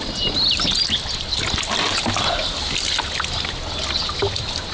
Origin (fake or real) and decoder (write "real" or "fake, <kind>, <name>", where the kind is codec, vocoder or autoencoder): real